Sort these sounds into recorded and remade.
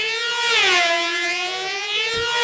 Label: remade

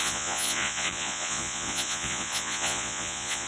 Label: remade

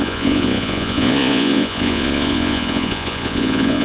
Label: remade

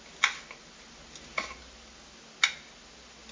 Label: recorded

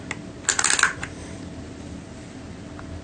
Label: recorded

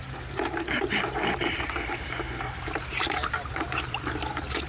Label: remade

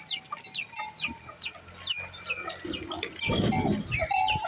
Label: recorded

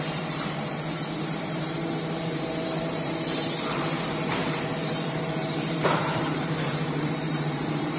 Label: remade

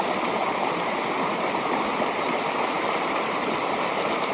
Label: remade